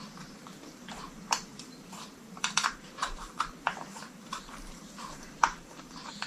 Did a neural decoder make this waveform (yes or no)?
yes